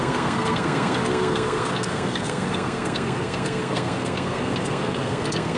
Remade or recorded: remade